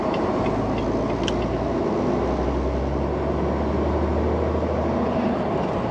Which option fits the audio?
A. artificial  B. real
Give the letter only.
B